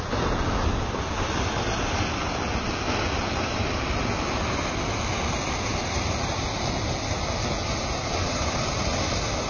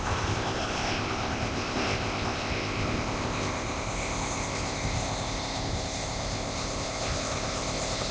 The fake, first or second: second